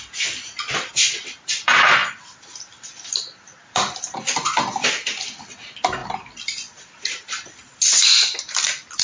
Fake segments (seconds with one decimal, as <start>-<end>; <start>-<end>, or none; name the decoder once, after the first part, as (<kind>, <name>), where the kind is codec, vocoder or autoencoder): 2.0-4.9 (vocoder, BigVGAN v2); 6.0-7.0

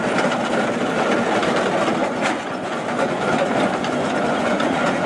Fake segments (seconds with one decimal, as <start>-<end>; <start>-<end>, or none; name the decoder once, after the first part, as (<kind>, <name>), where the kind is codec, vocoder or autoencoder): 2.0-5.1 (vocoder, Vocos)

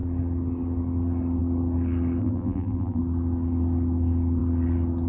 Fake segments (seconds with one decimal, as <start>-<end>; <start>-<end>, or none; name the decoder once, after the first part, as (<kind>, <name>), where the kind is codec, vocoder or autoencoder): 2.2-3.0 (vocoder, BigVGAN v2)

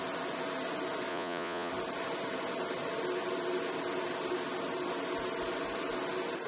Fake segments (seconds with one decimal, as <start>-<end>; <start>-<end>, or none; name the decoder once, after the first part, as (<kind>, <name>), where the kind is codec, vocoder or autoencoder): 1.1-1.7 (vocoder, Vocos)

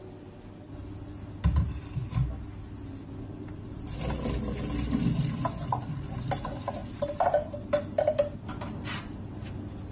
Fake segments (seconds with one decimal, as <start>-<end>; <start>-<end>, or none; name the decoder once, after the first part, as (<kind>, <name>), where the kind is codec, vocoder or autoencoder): 6.8-7.8 (vocoder, BigVGAN v2)

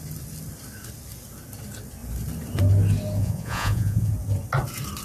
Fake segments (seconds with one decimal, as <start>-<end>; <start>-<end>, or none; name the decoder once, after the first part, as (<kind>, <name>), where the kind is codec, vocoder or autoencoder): 3.2-4.1 (vocoder, Vocos)

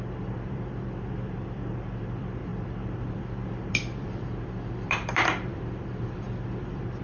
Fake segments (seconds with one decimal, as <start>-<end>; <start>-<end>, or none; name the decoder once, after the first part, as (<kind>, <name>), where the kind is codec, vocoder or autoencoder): 0.0-7.0 (vocoder, BigVGAN v2)